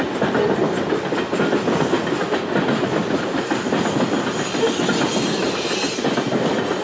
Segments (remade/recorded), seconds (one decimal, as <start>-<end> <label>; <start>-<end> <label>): 0.0-6.8 recorded